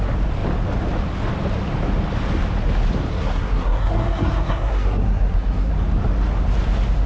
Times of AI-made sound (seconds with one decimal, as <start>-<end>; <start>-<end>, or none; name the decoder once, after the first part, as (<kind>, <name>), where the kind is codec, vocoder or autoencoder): 3.1-5.7 (codec, SNAC)